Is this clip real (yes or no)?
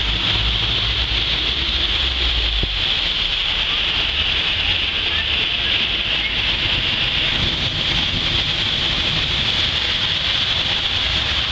yes